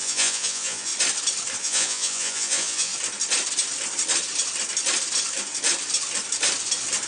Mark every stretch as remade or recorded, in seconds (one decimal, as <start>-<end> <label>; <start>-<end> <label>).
0.0-0.9 remade; 0.9-1.6 recorded; 1.6-2.9 remade; 2.9-7.1 recorded